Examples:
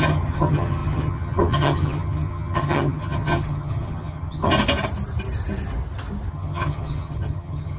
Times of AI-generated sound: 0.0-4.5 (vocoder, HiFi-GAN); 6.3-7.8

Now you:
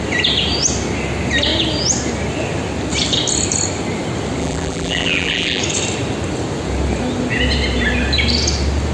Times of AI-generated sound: 4.4-5.6 (vocoder, BigVGAN v2)

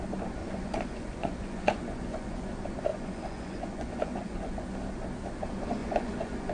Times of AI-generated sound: 0.4-2.5 (vocoder, Vocos); 2.9-4.7; 5.8-6.5

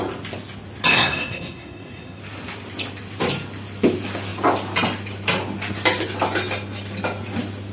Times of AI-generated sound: 0.9-2.2 (codec, SNAC)

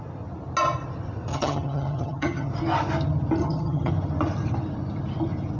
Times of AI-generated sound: 1.3-2.5 (vocoder, HiFi-GAN); 3.4-3.9